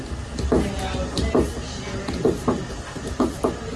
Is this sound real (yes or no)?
yes